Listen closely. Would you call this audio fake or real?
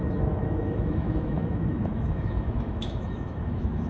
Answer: fake